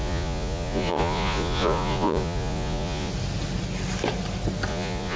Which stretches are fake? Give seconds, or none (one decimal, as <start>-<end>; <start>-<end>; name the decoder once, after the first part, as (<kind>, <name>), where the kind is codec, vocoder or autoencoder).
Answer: 0.0-3.1 (vocoder, Vocos); 4.7-5.2

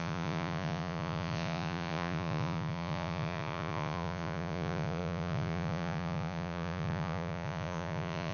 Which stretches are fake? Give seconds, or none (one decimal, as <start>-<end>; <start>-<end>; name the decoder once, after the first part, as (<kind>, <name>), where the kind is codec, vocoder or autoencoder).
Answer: 0.0-8.3 (vocoder, Vocos)

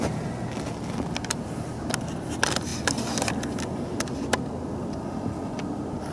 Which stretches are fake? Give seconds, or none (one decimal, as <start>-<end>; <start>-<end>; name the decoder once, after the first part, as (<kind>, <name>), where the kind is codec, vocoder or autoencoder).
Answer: none

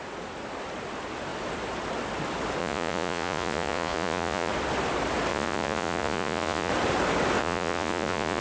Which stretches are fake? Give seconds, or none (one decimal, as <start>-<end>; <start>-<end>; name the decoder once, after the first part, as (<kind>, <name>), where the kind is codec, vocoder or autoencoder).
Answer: 2.6-4.5 (vocoder, Vocos); 5.3-6.7; 7.4-8.4

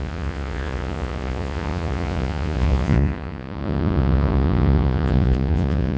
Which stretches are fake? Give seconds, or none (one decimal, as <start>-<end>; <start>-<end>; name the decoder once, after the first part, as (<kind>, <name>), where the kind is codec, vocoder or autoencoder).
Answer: 0.0-6.0 (vocoder, Vocos)

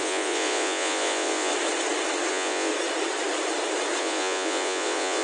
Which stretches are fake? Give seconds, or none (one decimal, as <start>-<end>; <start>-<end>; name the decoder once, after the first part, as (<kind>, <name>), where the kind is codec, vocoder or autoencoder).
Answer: 0.0-1.5 (vocoder, Vocos); 2.3-2.7; 4.0-5.2

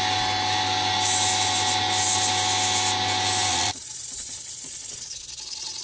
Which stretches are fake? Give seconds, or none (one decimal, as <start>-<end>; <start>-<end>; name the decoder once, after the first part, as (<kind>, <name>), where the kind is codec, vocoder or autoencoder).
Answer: 3.5-5.2 (vocoder, Vocos)

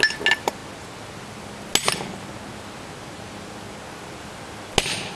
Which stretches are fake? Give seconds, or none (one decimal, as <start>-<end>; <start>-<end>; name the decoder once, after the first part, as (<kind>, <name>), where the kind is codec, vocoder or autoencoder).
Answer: none